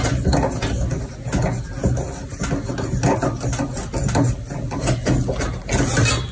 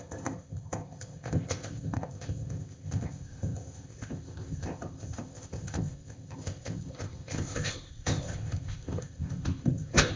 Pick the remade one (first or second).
second